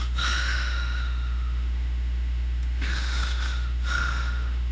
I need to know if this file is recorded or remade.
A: remade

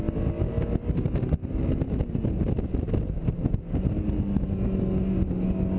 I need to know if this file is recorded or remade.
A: recorded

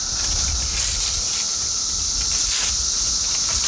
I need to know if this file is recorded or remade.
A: remade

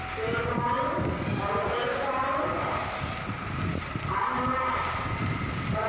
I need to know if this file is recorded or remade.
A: recorded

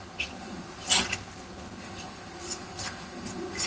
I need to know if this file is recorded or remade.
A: remade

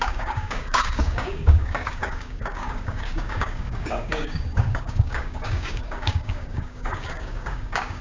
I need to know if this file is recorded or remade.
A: remade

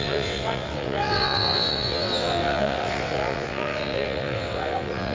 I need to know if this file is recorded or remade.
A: remade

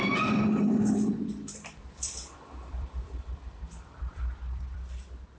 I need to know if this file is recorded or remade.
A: remade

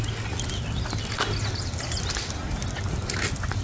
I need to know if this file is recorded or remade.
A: recorded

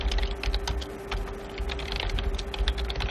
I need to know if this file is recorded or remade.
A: recorded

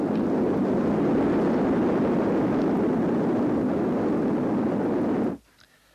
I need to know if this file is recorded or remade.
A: recorded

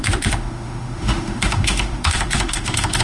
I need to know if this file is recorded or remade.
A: remade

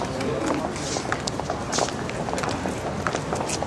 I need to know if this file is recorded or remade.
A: recorded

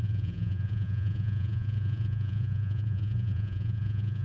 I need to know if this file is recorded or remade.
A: remade